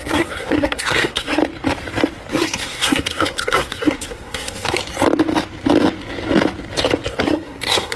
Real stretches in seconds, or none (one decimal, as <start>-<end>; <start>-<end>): 1.4-2.3; 4.8-7.2